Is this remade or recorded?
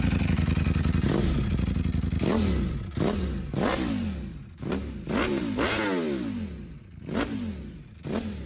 recorded